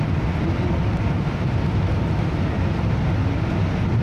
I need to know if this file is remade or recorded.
recorded